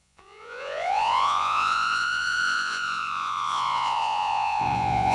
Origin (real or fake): fake